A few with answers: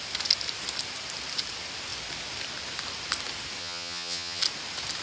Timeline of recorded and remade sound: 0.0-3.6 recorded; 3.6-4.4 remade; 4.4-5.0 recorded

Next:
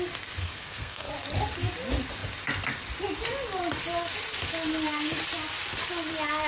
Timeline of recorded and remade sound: 0.0-0.4 recorded; 0.4-1.1 remade; 1.1-6.5 recorded

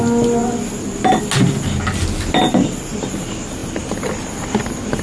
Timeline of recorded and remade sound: 0.0-5.0 recorded

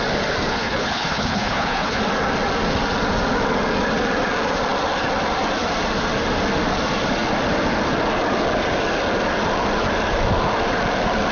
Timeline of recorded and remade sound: 0.0-0.5 recorded; 0.5-2.0 remade; 2.0-11.3 recorded

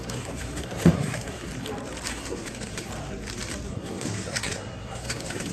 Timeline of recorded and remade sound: 0.0-1.5 remade; 1.5-2.1 recorded; 2.1-2.9 remade; 2.9-3.7 recorded; 3.7-5.5 remade

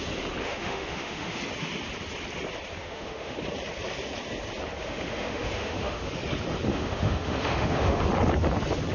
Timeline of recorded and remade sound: 0.0-0.4 recorded; 0.4-1.4 remade; 1.4-2.8 recorded; 2.8-3.4 remade; 3.4-4.8 recorded; 4.8-6.1 remade; 6.1-6.7 recorded; 6.7-8.0 remade; 8.0-8.9 recorded

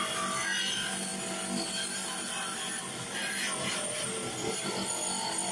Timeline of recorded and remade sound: 0.0-5.5 recorded

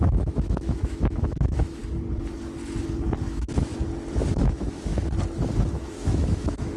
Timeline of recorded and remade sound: 0.0-1.8 remade; 1.8-3.2 recorded; 3.2-3.7 remade; 3.7-4.3 recorded; 4.3-4.9 remade; 4.9-5.7 recorded; 5.7-6.8 remade